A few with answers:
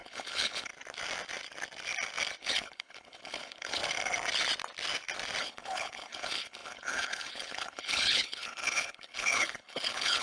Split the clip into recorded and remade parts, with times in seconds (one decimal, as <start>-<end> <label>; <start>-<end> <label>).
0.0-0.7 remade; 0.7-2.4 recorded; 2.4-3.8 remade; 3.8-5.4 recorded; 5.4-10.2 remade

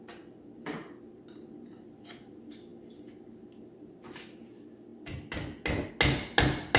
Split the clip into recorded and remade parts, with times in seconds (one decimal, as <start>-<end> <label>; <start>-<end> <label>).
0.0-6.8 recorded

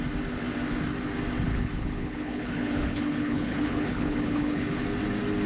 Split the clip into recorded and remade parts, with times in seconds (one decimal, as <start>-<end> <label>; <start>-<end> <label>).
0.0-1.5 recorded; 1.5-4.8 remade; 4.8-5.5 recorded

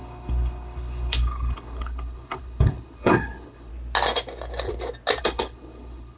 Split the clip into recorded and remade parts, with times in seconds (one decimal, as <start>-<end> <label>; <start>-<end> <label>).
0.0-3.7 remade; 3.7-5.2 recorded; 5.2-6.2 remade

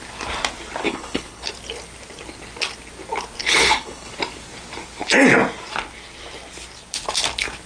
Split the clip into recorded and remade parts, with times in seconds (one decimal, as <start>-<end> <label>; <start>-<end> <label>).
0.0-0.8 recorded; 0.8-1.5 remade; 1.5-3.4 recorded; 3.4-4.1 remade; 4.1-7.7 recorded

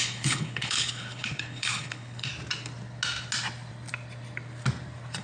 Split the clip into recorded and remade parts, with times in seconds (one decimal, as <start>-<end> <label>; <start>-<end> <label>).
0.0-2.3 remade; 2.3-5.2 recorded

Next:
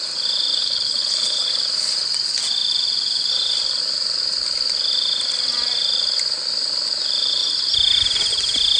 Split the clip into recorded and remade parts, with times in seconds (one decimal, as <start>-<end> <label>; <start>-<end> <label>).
0.0-0.6 recorded; 0.6-1.5 remade; 1.5-8.8 recorded